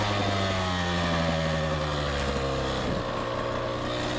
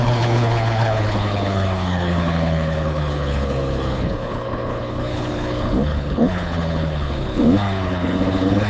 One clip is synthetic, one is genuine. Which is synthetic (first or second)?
second